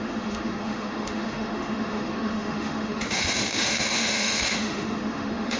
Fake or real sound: fake